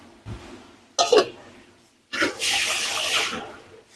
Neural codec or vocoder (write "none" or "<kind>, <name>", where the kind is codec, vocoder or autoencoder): none